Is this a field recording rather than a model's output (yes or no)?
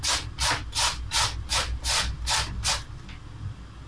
yes